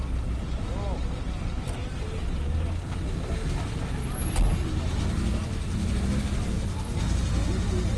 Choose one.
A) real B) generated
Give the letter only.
A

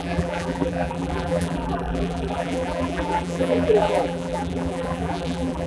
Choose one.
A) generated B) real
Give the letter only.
A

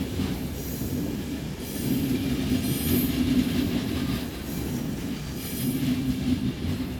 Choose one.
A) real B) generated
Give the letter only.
A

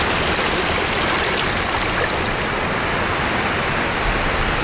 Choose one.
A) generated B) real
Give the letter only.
B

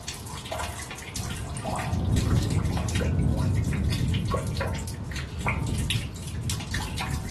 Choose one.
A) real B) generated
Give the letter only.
A